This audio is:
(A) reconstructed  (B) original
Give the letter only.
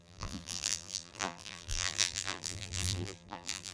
A